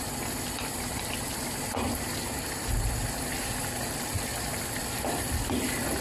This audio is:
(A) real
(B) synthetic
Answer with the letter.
A